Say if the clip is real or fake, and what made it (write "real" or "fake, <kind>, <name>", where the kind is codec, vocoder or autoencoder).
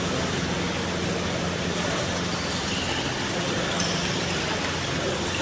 real